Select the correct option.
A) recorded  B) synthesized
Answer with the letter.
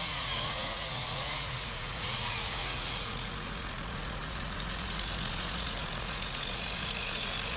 B